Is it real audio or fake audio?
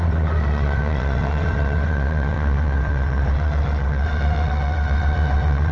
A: fake